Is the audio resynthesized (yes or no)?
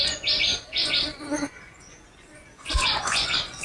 yes